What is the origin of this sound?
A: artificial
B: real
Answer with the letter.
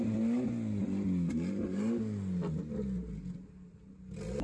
B